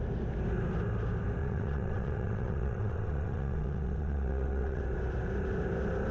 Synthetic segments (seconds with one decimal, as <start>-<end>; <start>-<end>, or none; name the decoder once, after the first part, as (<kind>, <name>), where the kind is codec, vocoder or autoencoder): 1.4-4.8 (vocoder, WaveNeXt)